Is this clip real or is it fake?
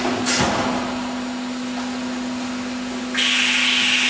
real